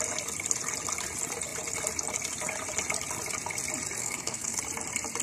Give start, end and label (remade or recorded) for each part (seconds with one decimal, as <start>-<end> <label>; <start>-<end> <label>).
0.0-4.0 recorded; 4.0-4.6 remade; 4.6-5.2 recorded